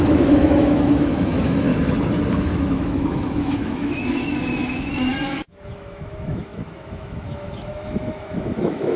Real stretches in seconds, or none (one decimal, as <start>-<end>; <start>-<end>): 1.7-2.3